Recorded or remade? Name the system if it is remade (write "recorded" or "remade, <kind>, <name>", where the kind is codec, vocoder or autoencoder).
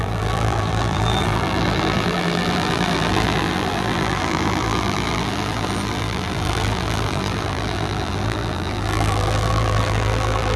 remade, vocoder, BigVGAN v2